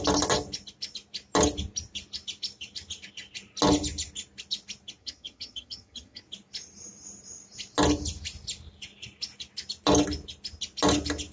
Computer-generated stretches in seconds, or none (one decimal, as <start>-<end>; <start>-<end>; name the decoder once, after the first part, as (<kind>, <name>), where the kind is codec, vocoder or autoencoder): 5.0-6.2 (vocoder, HiFi-GAN)